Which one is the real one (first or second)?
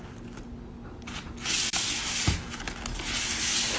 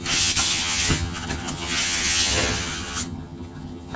first